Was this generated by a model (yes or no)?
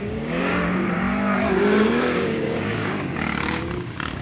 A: yes